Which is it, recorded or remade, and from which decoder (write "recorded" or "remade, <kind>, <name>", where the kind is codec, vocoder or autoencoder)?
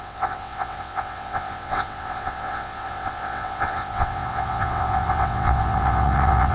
remade, vocoder, WaveNeXt